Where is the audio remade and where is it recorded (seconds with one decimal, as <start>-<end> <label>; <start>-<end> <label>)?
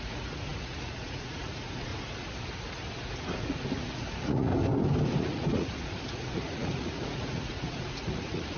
0.0-1.9 remade; 1.9-3.4 recorded; 3.4-4.5 remade; 4.5-5.2 recorded; 5.2-8.6 remade